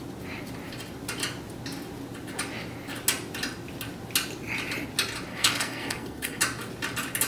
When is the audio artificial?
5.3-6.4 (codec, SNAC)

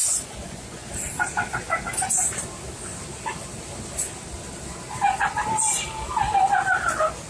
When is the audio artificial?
0.0-0.9 (vocoder, Vocos)

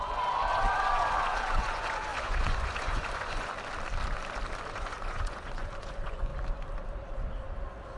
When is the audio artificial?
0.0-3.5 (vocoder, Vocos); 4.7-6.3

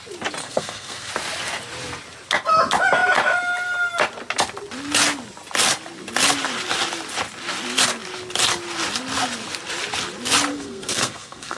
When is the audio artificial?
0.4-1.1 (codec, SNAC); 10.5-11.6

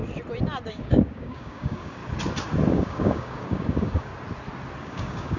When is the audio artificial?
0.7-2.0 (codec, DAC); 2.7-4.1; 4.8-5.4

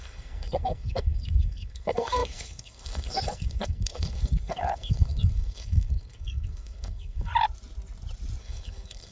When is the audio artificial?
0.0-7.3 (codec, SNAC); 8.4-9.1

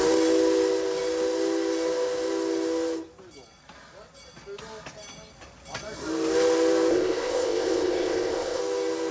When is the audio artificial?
6.9-8.6 (codec, ZipCodec)